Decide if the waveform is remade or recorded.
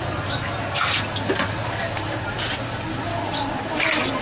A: recorded